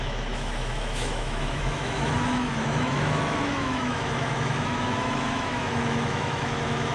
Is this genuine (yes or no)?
no